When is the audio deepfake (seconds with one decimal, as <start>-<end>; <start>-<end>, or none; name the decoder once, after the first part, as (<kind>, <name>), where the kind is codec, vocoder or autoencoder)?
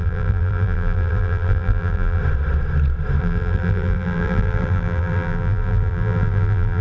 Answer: 0.0-2.2 (vocoder, BigVGAN v2); 3.2-6.8